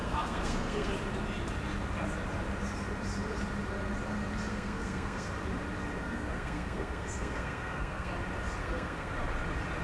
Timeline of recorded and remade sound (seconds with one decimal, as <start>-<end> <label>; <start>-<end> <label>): 0.0-0.9 remade; 0.9-4.5 recorded; 4.5-5.3 remade; 5.3-6.0 recorded; 6.0-8.1 remade; 8.1-8.6 recorded; 8.6-9.1 remade; 9.1-9.8 recorded